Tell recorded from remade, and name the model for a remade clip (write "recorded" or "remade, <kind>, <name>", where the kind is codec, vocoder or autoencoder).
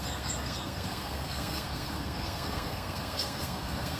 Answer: remade, codec, SNAC